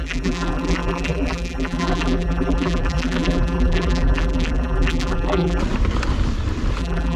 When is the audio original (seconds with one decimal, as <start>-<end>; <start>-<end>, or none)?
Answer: 5.6-6.8